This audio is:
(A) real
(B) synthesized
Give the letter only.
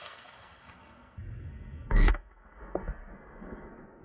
B